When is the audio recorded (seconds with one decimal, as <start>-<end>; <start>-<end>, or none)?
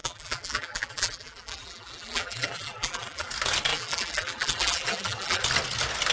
3.3-3.7; 5.4-6.1